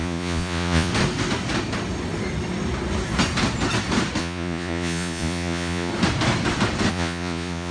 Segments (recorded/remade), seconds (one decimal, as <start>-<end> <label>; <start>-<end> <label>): 0.0-0.9 remade; 0.9-4.2 recorded; 4.2-5.9 remade; 5.9-6.9 recorded; 6.9-7.7 remade